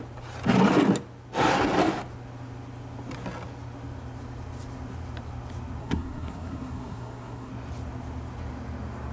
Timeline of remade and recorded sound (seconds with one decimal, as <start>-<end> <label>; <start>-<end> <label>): 0.0-5.8 recorded; 5.8-7.5 remade; 7.5-9.1 recorded